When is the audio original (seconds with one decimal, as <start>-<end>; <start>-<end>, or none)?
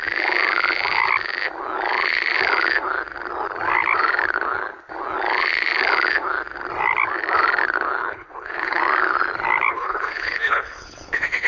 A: 0.0-8.0; 8.8-9.7